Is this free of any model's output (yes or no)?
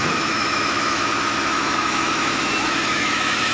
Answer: no